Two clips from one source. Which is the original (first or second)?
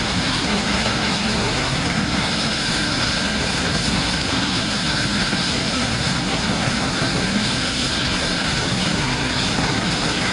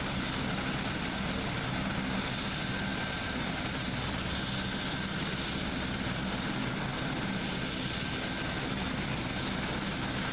second